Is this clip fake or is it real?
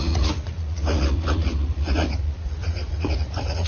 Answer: fake